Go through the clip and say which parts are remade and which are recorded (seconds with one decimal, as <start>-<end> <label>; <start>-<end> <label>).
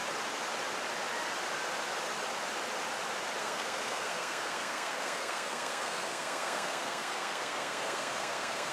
0.0-3.4 recorded; 3.4-8.7 remade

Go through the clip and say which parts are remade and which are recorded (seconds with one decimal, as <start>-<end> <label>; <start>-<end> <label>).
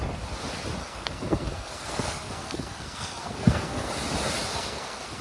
0.0-0.8 recorded; 0.8-3.9 remade; 3.9-4.5 recorded; 4.5-5.2 remade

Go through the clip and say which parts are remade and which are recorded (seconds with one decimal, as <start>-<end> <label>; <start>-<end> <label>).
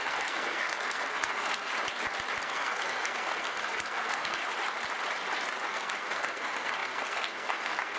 0.0-1.7 remade; 1.7-2.4 recorded; 2.4-4.4 remade; 4.4-5.7 recorded; 5.7-8.0 remade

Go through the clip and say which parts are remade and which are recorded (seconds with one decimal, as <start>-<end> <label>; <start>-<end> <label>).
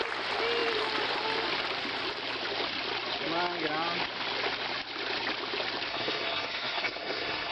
0.0-5.9 recorded; 5.9-7.5 remade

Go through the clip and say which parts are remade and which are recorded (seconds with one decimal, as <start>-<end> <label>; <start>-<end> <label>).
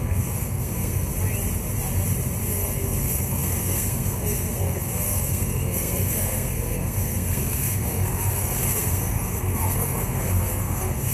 0.0-1.1 remade; 1.1-2.4 recorded; 2.4-11.1 remade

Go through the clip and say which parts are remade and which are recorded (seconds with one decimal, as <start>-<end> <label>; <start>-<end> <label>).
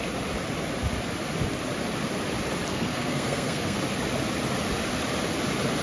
0.0-2.7 recorded; 2.7-3.8 remade; 3.8-5.8 recorded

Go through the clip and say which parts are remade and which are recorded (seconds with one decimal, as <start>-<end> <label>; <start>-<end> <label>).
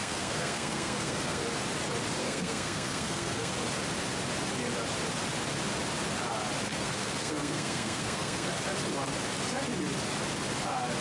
0.0-1.4 remade; 1.4-2.2 recorded; 2.2-3.5 remade; 3.5-6.7 recorded; 6.7-8.5 remade; 8.5-11.0 recorded